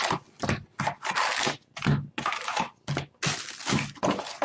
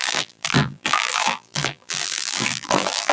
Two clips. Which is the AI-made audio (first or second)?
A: second